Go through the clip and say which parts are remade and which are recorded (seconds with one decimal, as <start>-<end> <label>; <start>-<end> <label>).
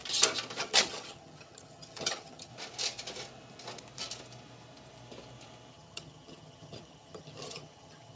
0.0-0.6 recorded; 0.6-2.5 remade; 2.5-5.7 recorded; 5.7-8.2 remade